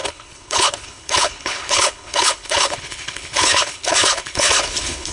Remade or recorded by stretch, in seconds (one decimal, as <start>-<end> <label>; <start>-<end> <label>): 0.0-5.1 remade